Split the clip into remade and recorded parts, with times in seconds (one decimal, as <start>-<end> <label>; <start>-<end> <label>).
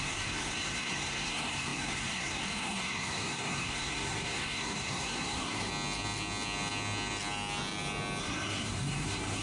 0.0-5.7 remade; 5.7-8.2 recorded; 8.2-9.4 remade